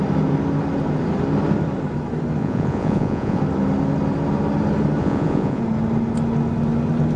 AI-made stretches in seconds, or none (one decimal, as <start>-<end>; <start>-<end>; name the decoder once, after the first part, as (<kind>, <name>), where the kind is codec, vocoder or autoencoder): 2.4-3.4 (vocoder, Vocos); 5.0-5.6